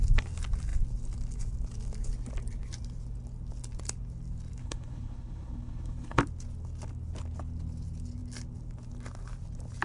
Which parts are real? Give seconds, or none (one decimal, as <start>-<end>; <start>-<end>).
0.0-4.6; 6.2-9.8

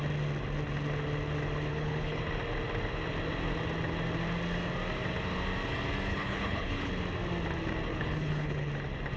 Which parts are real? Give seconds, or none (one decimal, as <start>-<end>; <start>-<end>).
0.0-1.7; 2.2-6.1; 6.9-7.9; 8.7-9.2

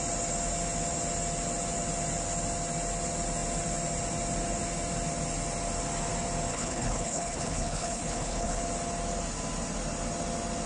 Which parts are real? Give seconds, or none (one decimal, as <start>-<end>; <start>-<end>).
0.0-6.5; 8.6-10.7